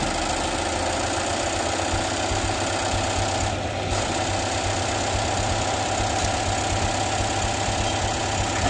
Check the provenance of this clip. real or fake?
real